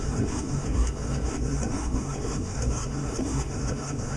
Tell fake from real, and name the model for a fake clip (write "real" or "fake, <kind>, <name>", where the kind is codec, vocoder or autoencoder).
fake, codec, SNAC